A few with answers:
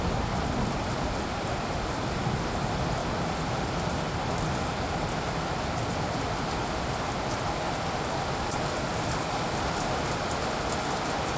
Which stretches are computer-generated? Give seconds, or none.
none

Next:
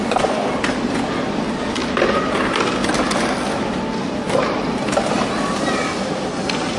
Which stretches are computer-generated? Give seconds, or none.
0.0-0.5 (codec, DAC)

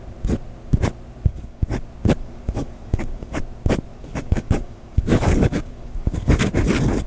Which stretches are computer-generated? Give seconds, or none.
1.3-1.8 (codec, DAC); 2.2-3.4; 3.9-6.4

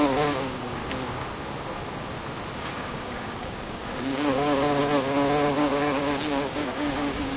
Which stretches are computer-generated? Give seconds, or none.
0.0-0.8 (codec, DAC); 2.6-4.8; 5.5-7.4

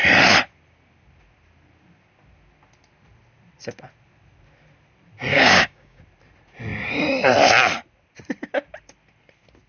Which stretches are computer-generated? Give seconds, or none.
5.3-6.0 (codec, DAC)

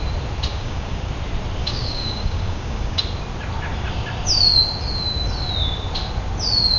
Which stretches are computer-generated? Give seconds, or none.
0.5-1.1 (codec, DAC); 1.6-3.0

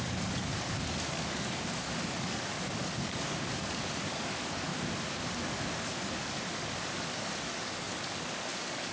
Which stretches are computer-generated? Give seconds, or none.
0.0-4.7 (codec, DAC); 5.4-8.9